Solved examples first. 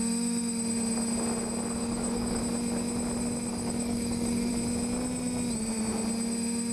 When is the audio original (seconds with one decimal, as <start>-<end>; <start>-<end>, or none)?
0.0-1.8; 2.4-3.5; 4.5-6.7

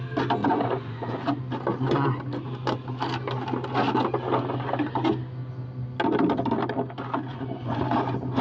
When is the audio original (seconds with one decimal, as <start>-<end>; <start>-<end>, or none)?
0.0-0.4; 1.4-7.3; 7.8-8.4

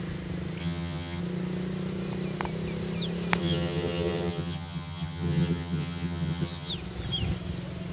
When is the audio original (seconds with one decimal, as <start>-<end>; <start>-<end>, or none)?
0.0-0.6; 1.2-3.4; 6.7-7.9